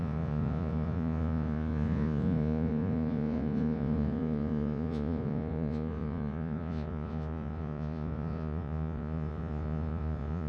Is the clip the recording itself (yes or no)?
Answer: no